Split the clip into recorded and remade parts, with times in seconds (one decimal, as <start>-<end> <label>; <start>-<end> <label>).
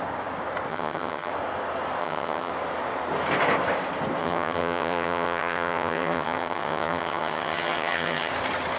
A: 0.0-0.7 recorded; 0.7-1.3 remade; 1.3-2.0 recorded; 2.0-2.5 remade; 2.5-4.2 recorded; 4.2-8.3 remade; 8.3-8.8 recorded